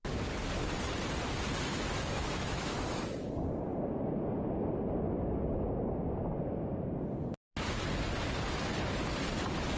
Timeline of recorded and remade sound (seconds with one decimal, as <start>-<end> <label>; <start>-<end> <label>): 0.0-1.7 recorded; 1.7-3.3 remade; 3.3-9.8 recorded